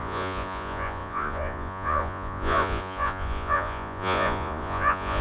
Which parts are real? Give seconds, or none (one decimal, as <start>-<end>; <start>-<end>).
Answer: none

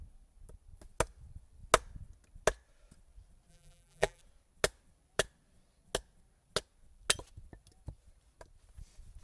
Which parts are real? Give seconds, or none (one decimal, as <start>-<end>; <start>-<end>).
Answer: 0.0-3.5; 4.2-9.2

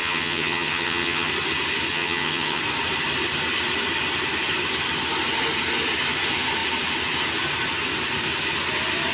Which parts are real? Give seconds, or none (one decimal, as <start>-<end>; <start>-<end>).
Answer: 1.3-1.9; 2.6-9.1